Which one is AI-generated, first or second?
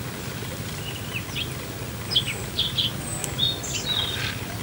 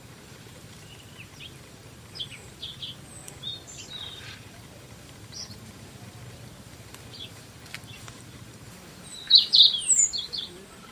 second